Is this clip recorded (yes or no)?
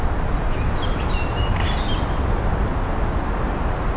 yes